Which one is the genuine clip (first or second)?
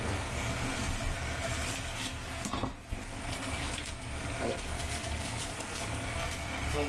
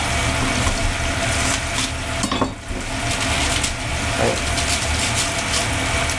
second